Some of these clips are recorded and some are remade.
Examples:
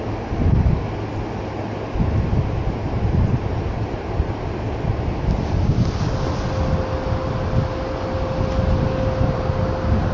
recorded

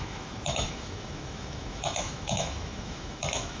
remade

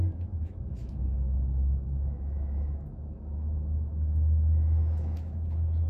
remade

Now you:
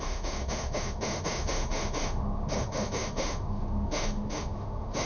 remade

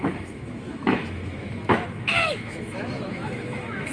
remade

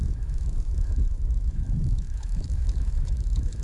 remade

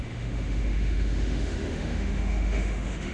remade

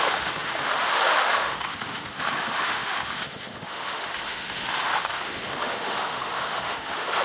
remade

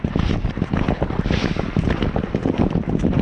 recorded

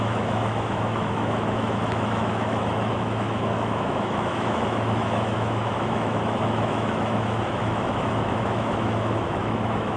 remade